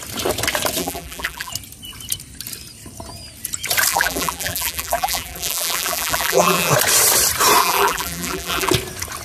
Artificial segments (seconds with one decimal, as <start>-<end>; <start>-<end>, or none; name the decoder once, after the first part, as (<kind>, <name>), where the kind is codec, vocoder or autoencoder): 0.8-1.5 (vocoder, BigVGAN v2); 3.9-6.7; 7.6-8.7